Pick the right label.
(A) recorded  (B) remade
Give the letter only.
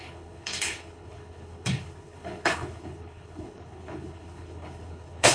B